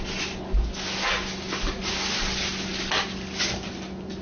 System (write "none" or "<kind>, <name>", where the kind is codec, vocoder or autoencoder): none